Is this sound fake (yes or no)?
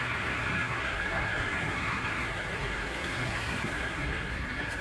yes